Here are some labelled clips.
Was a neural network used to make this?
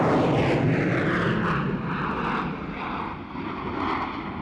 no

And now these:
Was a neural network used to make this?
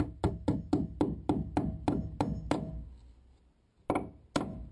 no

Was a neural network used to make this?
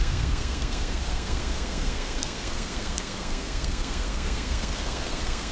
yes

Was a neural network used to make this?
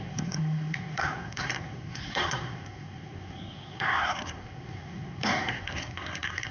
yes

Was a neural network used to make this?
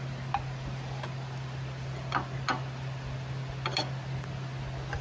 no